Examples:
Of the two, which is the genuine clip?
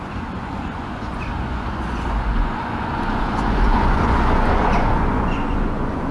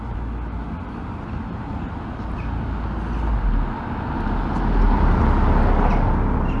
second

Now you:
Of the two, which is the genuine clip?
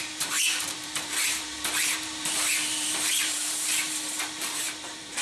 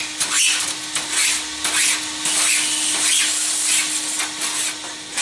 second